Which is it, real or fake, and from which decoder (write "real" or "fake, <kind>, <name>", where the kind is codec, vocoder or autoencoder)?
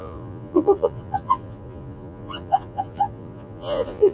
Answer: fake, vocoder, Vocos